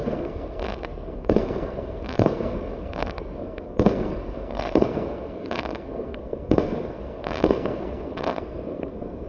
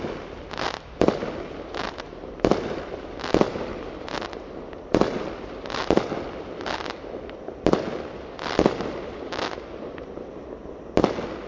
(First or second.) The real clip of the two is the second